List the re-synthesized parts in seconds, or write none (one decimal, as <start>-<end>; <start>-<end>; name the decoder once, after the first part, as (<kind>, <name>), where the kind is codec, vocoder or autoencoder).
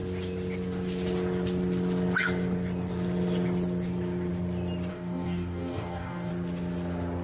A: 4.9-6.3 (codec, DAC)